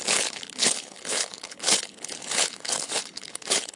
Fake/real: fake